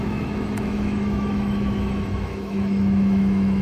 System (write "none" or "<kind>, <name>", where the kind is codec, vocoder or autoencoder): autoencoder, DAC-VAE